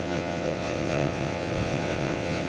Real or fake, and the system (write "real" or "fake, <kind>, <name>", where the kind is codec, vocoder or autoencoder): fake, vocoder, WaveNeXt